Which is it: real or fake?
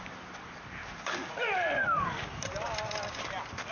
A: fake